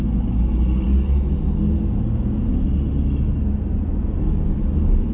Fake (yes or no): no